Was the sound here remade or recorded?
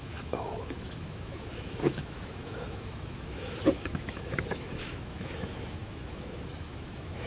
remade